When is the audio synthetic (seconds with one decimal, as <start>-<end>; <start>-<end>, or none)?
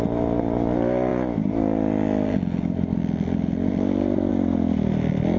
none